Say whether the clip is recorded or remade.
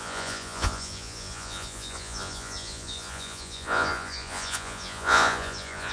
remade